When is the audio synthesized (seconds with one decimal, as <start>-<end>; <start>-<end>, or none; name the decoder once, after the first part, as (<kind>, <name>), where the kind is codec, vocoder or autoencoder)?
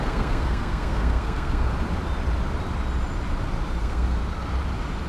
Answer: 0.0-1.7 (codec, SNAC); 3.8-4.2